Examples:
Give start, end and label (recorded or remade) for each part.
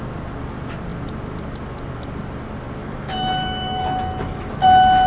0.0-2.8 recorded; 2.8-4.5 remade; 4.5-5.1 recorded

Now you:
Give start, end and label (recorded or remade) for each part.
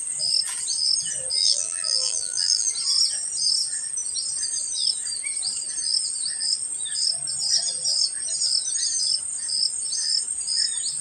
0.0-1.4 recorded; 1.4-2.7 remade; 2.7-11.0 recorded